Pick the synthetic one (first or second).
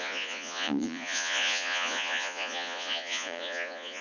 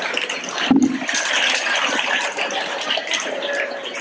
first